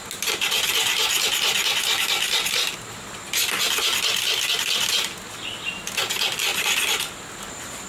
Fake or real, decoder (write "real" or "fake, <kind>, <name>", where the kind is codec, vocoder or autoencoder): real